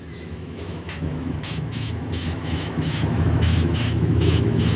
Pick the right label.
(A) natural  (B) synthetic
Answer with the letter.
B